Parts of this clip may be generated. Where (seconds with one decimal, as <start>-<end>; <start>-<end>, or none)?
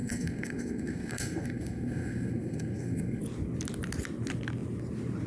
0.0-3.2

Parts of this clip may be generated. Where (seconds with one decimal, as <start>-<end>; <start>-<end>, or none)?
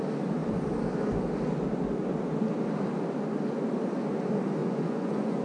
4.6-5.4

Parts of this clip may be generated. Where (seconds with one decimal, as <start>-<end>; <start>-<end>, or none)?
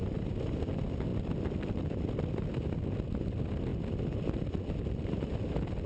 1.1-2.5; 3.7-5.4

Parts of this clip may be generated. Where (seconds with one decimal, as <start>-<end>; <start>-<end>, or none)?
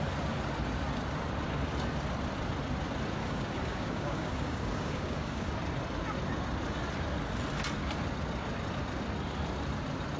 3.2-5.5